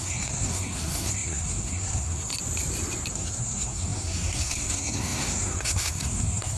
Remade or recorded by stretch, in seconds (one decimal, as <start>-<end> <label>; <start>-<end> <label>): 0.0-2.3 remade; 2.3-3.1 recorded; 3.1-6.6 remade